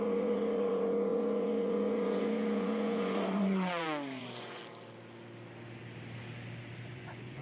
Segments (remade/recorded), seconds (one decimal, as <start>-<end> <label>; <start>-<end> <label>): 0.0-4.6 remade; 4.6-6.9 recorded; 6.9-7.4 remade

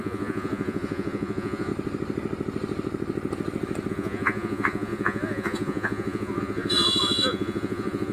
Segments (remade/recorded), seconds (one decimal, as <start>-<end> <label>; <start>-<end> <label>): 0.0-1.7 remade; 1.7-3.9 recorded; 3.9-8.1 remade

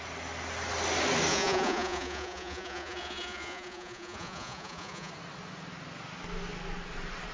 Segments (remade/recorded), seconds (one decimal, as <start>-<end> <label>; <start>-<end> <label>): 0.0-1.3 recorded; 1.3-5.1 remade; 5.1-7.3 recorded